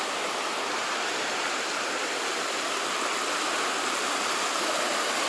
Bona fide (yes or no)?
yes